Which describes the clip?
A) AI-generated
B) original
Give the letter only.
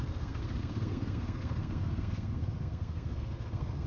A